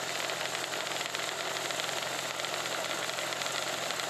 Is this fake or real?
real